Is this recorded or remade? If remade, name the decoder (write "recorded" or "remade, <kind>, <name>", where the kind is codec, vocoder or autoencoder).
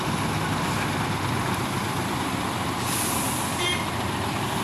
recorded